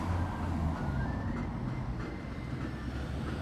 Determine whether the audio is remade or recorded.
recorded